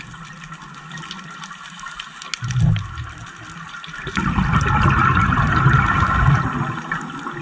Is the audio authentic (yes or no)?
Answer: yes